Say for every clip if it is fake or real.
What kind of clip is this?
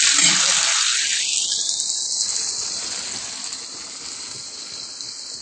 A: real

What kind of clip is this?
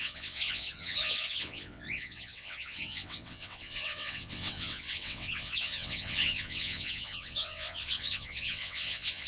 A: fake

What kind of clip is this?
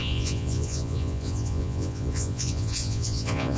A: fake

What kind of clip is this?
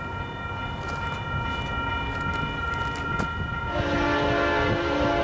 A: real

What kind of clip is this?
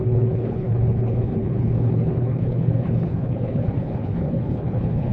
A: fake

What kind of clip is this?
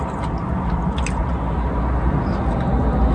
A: real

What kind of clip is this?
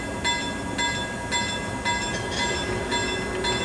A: real